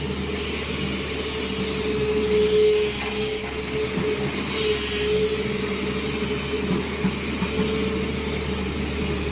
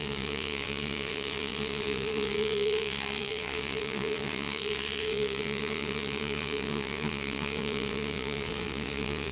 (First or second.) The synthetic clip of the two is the second